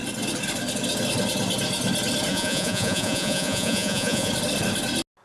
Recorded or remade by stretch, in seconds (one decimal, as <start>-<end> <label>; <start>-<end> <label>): 0.0-2.3 recorded; 2.3-4.3 remade; 4.3-5.2 recorded